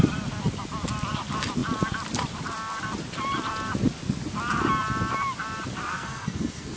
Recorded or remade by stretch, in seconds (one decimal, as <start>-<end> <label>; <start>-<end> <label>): 0.0-5.9 recorded; 5.9-6.8 remade